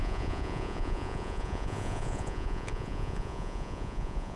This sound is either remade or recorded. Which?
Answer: remade